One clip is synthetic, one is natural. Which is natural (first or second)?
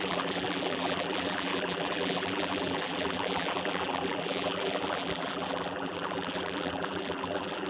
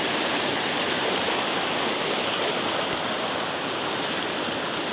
second